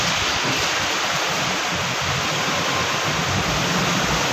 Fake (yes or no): no